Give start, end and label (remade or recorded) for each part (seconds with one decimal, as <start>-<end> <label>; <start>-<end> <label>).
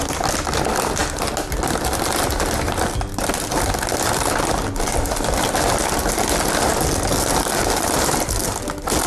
0.0-9.1 recorded